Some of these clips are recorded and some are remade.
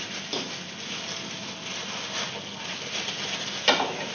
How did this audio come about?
recorded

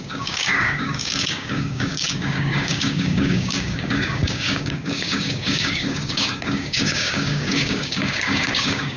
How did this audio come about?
remade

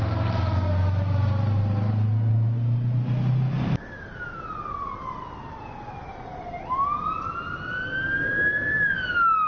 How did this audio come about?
recorded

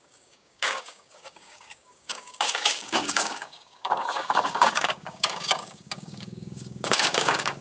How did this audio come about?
remade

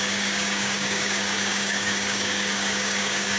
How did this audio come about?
remade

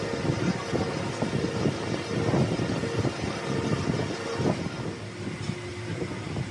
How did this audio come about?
recorded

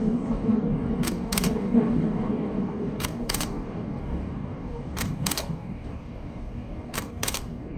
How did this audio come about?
remade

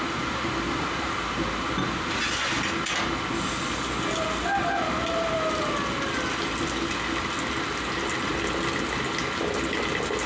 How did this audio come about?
recorded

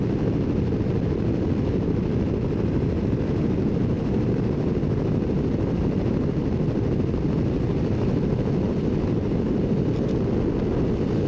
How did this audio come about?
recorded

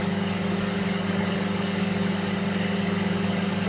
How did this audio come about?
remade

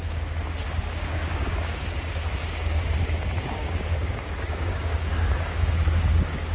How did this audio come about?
remade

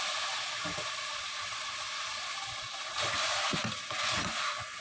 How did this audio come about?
recorded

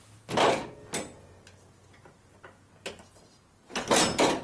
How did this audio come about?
recorded